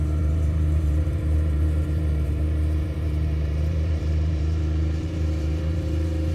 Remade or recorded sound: remade